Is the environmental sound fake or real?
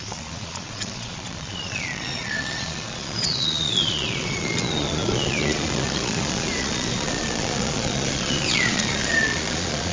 fake